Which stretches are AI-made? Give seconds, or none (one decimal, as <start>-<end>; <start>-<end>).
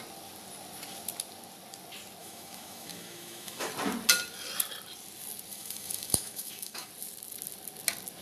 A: 2.2-3.7; 5.5-6.9